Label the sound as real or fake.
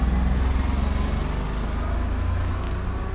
real